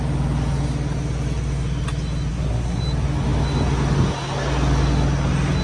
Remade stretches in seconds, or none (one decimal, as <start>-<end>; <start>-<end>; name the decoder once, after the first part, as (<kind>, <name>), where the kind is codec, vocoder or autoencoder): 2.3-2.8 (codec, SNAC)